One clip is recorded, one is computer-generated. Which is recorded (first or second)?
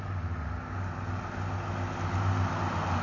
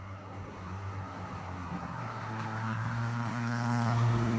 first